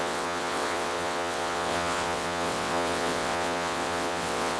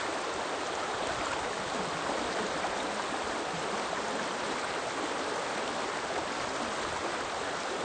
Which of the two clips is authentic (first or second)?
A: second